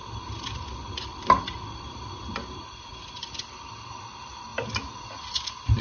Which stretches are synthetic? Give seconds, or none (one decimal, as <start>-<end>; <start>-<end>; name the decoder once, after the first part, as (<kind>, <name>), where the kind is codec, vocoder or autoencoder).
0.0-4.5 (vocoder, BigVGAN v2); 5.3-5.8